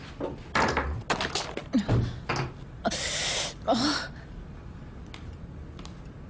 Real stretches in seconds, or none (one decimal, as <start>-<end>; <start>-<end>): 0.0-6.3